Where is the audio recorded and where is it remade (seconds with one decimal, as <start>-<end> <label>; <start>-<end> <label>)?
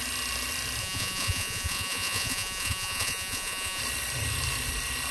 0.0-0.8 recorded; 0.8-3.8 remade; 3.8-5.1 recorded